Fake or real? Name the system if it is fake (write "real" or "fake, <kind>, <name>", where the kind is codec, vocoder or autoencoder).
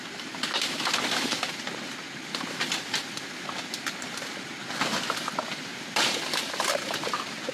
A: real